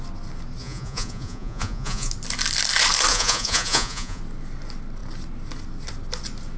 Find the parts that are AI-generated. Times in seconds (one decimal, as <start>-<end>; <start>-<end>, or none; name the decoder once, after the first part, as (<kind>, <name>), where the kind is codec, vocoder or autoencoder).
0.6-2.1 (vocoder, Vocos); 3.1-4.2